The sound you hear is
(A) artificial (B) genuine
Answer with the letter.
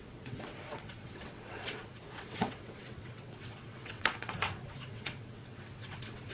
A